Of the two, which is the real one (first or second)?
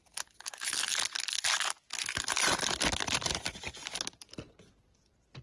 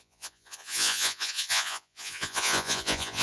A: first